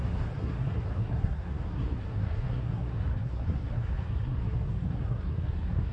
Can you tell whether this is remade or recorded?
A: remade